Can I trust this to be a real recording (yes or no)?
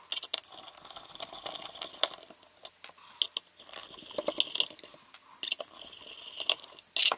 yes